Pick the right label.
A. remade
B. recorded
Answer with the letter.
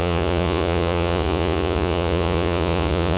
A